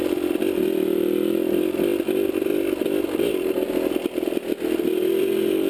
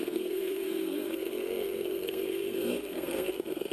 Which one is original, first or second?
first